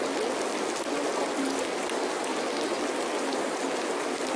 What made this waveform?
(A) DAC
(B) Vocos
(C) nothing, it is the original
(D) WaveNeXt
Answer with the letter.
C